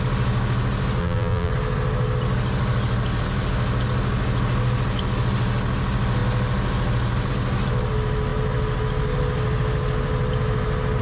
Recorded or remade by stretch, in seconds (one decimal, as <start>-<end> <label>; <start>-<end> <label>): 0.0-1.0 recorded; 1.0-1.5 remade; 1.5-11.0 recorded